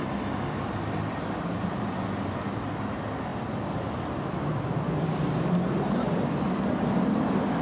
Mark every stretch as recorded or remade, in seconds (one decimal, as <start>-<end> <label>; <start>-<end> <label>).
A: 0.0-7.6 recorded